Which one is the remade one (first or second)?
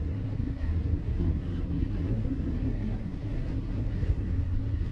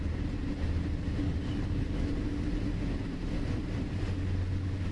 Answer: first